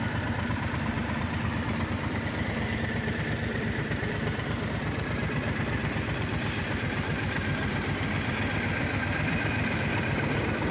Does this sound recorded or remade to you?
remade